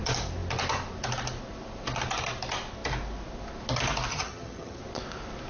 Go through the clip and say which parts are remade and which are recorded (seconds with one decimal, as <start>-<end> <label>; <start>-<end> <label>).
0.0-4.1 recorded; 4.1-4.8 remade; 4.8-5.5 recorded